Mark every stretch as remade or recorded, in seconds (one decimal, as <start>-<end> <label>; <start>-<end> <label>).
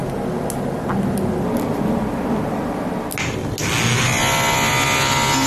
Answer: 0.0-5.5 recorded